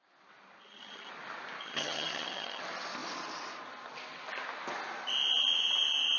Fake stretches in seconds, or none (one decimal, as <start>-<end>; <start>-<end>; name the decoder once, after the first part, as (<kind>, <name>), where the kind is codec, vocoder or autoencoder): 0.6-1.1 (vocoder, HiFi-GAN); 1.6-2.6